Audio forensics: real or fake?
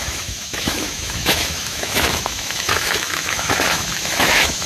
fake